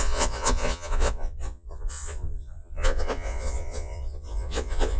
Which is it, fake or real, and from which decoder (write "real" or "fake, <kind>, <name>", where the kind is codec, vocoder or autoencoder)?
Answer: fake, vocoder, Vocos